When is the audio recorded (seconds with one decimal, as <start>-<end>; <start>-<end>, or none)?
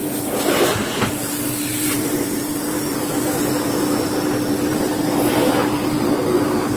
none